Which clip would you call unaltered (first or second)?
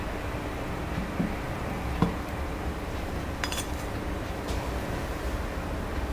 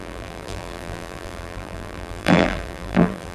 first